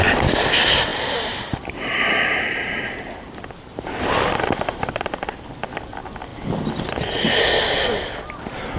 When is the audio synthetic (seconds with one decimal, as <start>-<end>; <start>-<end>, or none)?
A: 0.9-5.2